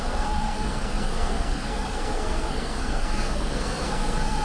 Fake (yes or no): yes